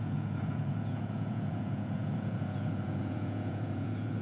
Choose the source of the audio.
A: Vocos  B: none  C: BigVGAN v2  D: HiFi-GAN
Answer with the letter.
A